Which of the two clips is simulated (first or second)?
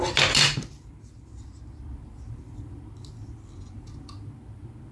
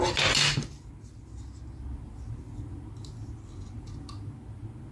first